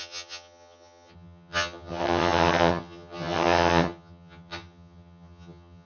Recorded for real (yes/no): no